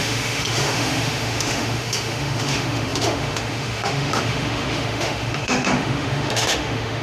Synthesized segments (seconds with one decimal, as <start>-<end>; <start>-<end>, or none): 0.0-7.0